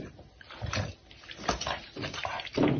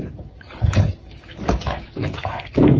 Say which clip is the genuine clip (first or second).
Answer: first